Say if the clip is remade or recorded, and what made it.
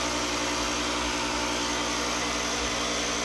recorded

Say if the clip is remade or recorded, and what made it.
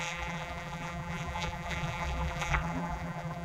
remade, vocoder, BigVGAN v2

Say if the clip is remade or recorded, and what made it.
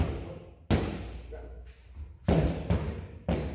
recorded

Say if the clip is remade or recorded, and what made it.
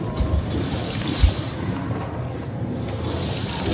remade, vocoder, BigVGAN v2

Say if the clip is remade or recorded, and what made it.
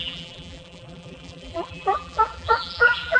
remade, vocoder, BigVGAN v2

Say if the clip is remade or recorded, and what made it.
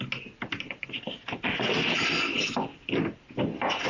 recorded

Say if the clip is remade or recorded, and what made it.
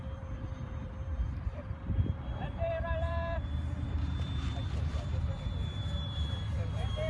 remade, vocoder, BigVGAN v2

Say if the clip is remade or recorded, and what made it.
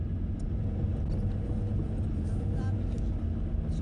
recorded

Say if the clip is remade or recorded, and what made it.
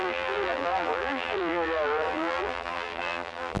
remade, vocoder, BigVGAN v2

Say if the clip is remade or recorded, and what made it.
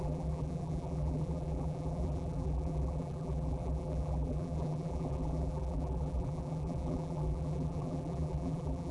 remade, vocoder, BigVGAN v2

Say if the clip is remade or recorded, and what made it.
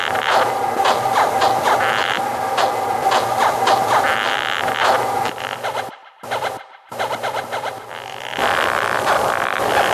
remade, vocoder, BigVGAN v2